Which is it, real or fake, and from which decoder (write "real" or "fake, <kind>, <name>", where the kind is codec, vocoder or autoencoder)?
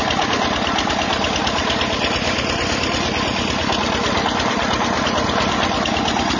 real